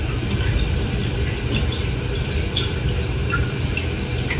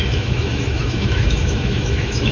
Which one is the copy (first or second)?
second